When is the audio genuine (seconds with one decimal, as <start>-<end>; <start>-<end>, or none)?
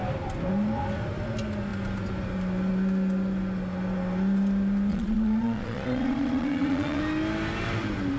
0.0-4.9; 7.0-8.2